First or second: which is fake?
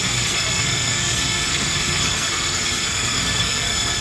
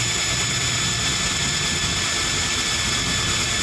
first